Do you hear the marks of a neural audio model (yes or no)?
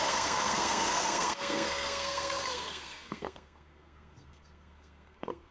yes